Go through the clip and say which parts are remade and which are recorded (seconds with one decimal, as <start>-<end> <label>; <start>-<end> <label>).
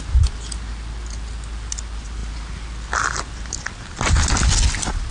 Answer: 0.0-5.1 recorded